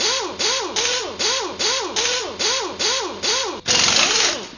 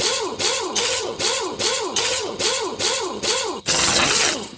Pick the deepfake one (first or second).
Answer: second